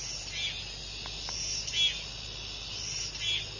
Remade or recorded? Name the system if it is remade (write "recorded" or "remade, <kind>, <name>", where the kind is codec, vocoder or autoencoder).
recorded